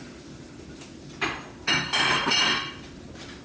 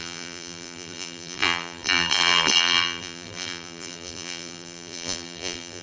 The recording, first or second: first